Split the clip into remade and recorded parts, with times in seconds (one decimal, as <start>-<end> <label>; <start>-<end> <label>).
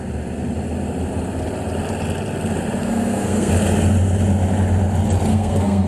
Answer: 0.0-2.8 recorded; 2.8-3.5 remade; 3.5-5.3 recorded; 5.3-5.9 remade